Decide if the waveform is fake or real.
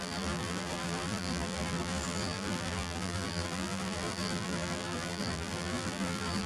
fake